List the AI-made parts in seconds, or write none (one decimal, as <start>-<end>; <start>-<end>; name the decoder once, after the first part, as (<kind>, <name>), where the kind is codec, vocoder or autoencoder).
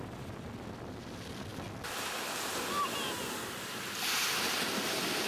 none